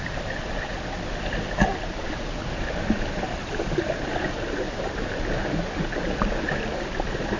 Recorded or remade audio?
recorded